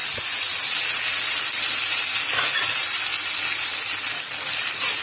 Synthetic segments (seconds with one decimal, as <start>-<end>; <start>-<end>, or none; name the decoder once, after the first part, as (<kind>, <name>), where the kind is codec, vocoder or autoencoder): none